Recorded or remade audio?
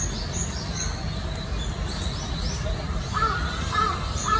recorded